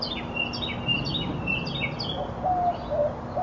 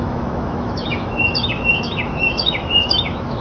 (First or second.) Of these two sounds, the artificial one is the second